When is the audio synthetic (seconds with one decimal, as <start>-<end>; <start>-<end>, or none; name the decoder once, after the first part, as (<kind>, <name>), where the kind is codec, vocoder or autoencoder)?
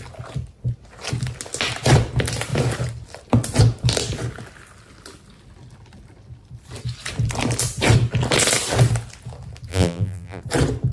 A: 9.7-10.4 (vocoder, BigVGAN v2)